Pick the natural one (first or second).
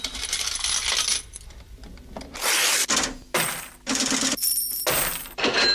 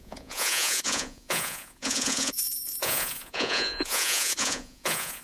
first